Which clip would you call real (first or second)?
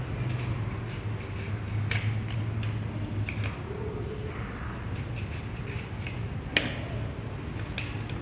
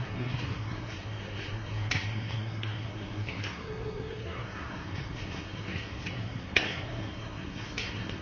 first